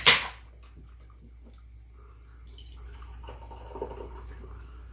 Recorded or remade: recorded